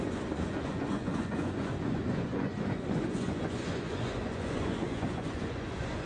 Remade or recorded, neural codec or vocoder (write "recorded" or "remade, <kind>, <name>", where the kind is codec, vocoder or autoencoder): remade, vocoder, Vocos